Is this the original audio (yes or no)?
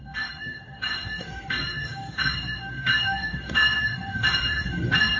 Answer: no